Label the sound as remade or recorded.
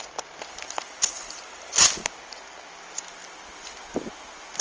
recorded